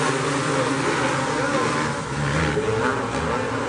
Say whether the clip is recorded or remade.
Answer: recorded